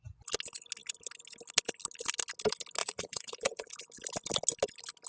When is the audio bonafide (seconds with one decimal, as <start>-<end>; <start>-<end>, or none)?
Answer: 0.0-2.8; 3.7-5.1